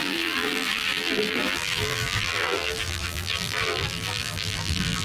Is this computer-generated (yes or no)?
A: yes